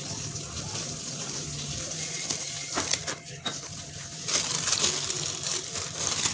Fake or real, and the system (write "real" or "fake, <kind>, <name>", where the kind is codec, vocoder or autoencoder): fake, vocoder, BigVGAN v2